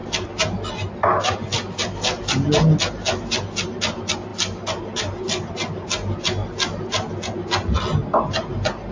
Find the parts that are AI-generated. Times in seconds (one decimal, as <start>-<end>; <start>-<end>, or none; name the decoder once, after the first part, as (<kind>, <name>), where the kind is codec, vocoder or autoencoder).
none

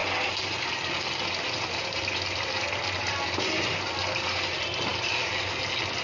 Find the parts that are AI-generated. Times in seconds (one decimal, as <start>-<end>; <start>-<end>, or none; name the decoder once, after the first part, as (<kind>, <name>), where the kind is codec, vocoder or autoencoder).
none

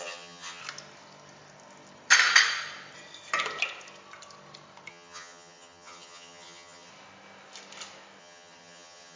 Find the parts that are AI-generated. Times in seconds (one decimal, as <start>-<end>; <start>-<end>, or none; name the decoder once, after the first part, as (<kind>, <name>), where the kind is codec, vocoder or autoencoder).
0.0-0.6 (vocoder, HiFi-GAN); 4.9-6.9; 8.2-9.2

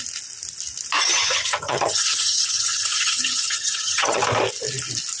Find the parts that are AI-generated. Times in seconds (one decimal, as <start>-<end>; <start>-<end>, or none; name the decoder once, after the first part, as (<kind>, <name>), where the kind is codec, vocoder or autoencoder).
1.1-4.2 (vocoder, HiFi-GAN)

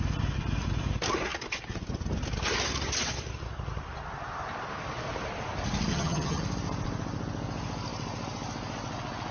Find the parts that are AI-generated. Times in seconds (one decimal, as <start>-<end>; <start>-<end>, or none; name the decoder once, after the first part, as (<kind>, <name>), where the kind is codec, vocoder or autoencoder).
5.9-6.4 (vocoder, HiFi-GAN)

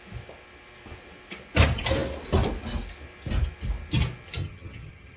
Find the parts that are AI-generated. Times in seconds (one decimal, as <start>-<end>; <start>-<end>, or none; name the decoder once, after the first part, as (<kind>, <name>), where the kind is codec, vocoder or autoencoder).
4.4-5.2 (vocoder, HiFi-GAN)

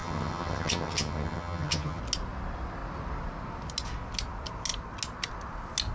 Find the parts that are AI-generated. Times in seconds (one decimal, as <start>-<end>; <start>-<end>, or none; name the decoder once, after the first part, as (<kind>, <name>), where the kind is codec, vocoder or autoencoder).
0.0-2.0 (vocoder, HiFi-GAN)